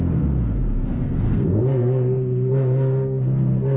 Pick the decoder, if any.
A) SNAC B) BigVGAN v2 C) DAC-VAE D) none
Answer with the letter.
A